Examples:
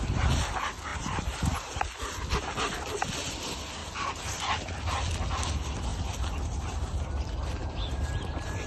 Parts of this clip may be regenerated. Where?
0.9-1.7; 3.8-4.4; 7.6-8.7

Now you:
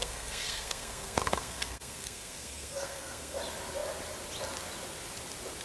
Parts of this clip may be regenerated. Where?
0.0-3.4

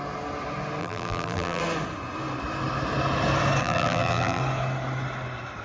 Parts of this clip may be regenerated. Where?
0.8-1.6; 3.6-4.4

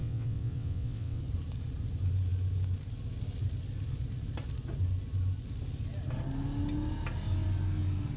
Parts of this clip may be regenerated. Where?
0.0-1.2

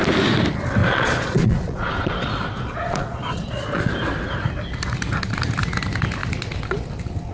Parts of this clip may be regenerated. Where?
0.8-3.9

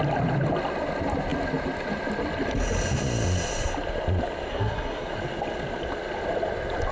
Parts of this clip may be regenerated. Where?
4.5-5.1

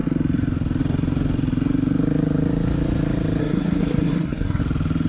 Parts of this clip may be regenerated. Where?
3.4-4.6

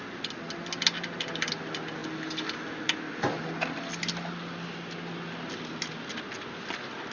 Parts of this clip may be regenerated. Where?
none